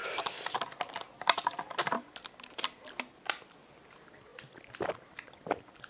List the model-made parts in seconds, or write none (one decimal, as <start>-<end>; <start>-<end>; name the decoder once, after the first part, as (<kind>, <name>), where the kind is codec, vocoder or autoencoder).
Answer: 0.0-4.3 (vocoder, BigVGAN v2); 5.0-5.9